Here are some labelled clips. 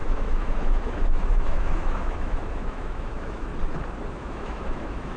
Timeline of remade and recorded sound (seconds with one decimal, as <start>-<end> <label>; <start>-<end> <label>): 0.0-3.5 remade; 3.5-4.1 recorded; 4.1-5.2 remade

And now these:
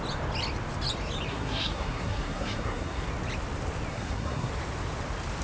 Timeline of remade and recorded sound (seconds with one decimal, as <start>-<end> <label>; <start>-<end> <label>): 0.0-1.3 recorded; 1.3-3.1 remade; 3.1-3.9 recorded; 3.9-4.5 remade; 4.5-5.4 recorded

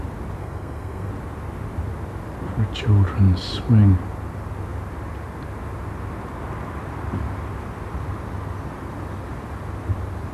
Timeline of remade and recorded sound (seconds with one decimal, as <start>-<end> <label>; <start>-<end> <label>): 0.0-0.4 recorded; 0.4-1.1 remade; 1.1-10.3 recorded

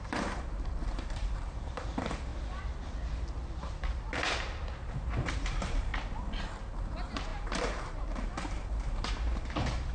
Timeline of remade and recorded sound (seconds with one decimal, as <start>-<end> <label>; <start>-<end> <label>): 0.0-2.3 remade; 2.3-5.1 recorded; 5.1-5.9 remade; 5.9-6.8 recorded; 6.8-9.9 remade

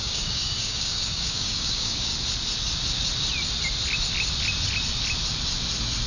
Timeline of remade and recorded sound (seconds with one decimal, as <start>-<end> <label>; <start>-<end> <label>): 0.0-2.1 remade; 2.1-6.1 recorded

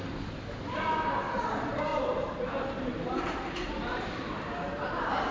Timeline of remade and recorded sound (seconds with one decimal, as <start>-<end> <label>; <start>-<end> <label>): 0.0-1.9 recorded; 1.9-5.3 remade

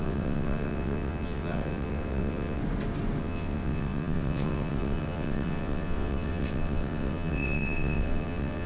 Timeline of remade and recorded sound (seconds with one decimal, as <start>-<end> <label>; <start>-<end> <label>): 0.0-2.6 remade; 2.6-3.2 recorded; 3.2-8.7 remade

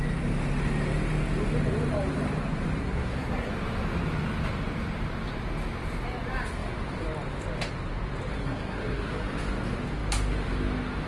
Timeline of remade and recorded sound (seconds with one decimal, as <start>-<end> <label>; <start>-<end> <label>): 0.0-2.8 recorded; 2.8-3.5 remade; 3.5-8.3 recorded; 8.3-9.1 remade; 9.1-11.1 recorded